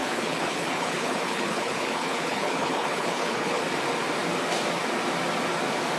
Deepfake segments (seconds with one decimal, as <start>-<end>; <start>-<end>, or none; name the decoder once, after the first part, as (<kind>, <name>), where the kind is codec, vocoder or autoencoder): 0.0-3.6 (codec, HILCodec)